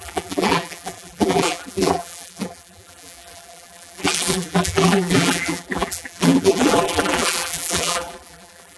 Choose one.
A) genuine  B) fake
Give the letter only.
B